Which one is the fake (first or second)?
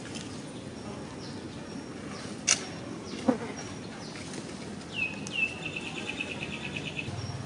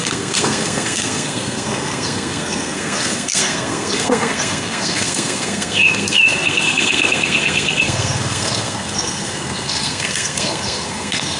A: second